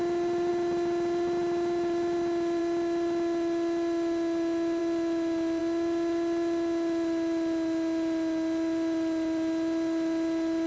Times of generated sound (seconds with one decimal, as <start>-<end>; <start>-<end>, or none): none